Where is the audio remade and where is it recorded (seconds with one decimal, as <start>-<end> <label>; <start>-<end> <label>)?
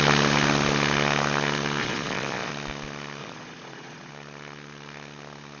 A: 0.0-1.8 recorded; 1.8-2.5 remade; 2.5-3.2 recorded; 3.2-4.1 remade; 4.1-5.6 recorded